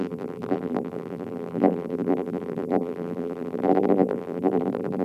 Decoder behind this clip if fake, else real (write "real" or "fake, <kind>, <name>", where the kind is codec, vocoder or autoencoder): fake, vocoder, BigVGAN v2